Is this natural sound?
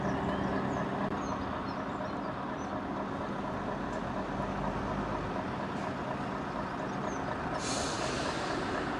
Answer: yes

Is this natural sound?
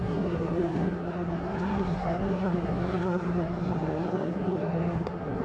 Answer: no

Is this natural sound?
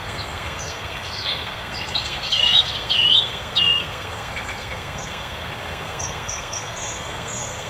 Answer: no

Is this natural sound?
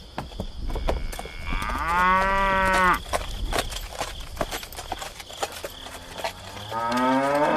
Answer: yes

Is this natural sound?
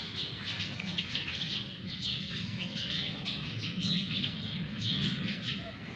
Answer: no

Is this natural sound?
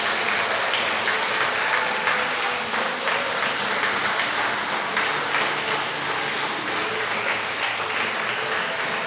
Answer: yes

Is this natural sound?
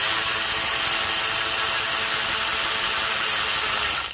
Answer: yes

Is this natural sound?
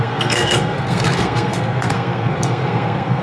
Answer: no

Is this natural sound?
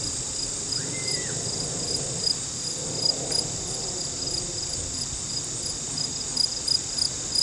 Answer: yes